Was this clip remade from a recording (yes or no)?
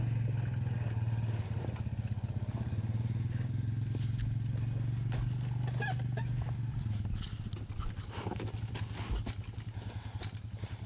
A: no